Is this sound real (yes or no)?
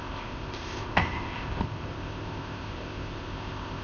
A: no